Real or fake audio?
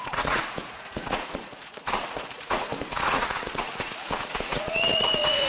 fake